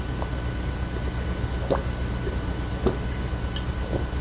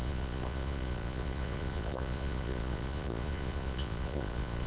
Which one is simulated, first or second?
second